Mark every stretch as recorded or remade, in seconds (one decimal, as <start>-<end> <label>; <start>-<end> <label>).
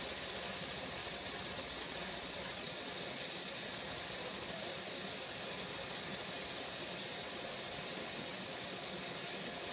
0.0-1.0 recorded; 1.0-2.9 remade; 2.9-6.9 recorded; 6.9-8.5 remade; 8.5-9.7 recorded